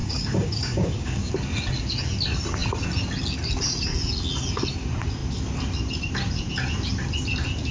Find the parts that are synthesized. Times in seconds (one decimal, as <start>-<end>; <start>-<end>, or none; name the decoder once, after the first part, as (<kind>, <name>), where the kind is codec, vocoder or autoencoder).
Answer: 0.0-1.3 (codec, DAC)